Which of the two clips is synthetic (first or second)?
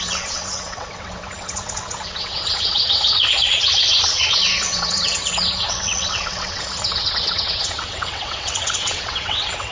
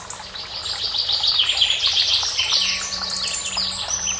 first